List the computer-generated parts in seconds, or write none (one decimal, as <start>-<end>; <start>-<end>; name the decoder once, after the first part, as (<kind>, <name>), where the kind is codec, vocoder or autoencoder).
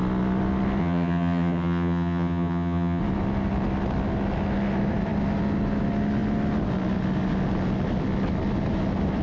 0.8-3.0 (vocoder, HiFi-GAN)